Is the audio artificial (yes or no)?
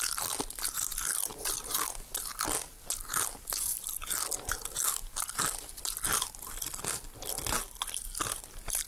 no